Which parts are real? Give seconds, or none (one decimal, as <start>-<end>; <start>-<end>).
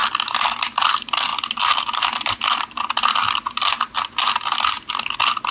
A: 0.0-5.5